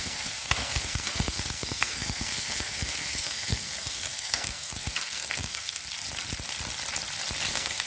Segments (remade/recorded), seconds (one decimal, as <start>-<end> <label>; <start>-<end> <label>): 0.0-5.8 remade; 5.8-7.5 recorded; 7.5-7.9 remade

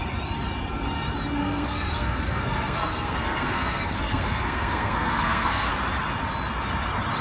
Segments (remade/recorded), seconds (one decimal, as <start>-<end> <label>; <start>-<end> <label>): 0.0-1.4 recorded; 1.4-5.7 remade; 5.7-7.2 recorded